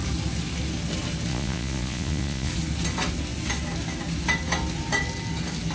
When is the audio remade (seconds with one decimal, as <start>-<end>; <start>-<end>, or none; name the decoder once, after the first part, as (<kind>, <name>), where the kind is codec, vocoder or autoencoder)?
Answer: 1.3-2.5 (vocoder, Vocos)